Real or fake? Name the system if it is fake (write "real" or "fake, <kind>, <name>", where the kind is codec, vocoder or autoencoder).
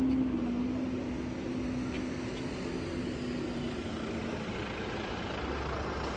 real